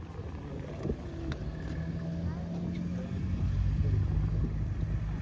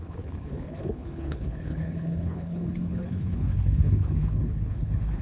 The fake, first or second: second